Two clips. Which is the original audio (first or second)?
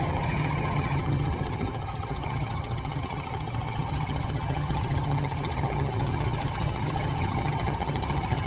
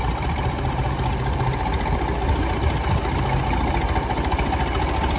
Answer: second